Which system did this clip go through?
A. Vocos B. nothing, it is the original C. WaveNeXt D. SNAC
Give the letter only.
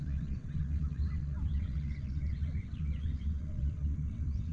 C